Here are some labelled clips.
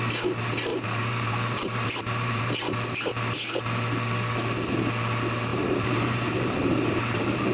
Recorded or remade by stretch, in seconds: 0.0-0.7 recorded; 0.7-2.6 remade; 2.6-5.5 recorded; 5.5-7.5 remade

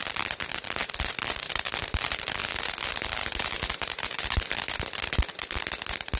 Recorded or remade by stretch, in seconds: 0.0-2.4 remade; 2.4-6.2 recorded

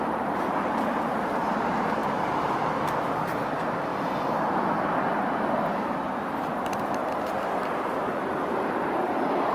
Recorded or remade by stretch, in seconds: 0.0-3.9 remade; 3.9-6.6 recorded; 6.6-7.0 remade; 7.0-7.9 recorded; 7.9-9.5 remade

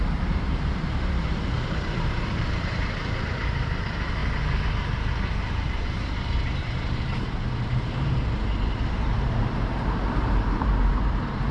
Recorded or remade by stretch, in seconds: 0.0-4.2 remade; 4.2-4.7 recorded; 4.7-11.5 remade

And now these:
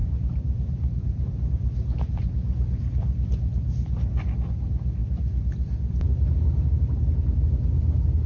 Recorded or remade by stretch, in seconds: 0.0-1.5 remade; 1.5-8.3 recorded

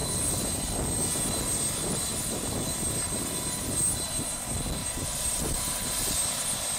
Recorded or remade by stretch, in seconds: 0.0-4.8 recorded; 4.8-5.8 remade; 5.8-6.8 recorded